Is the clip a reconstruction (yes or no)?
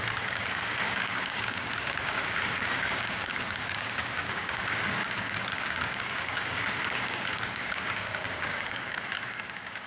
yes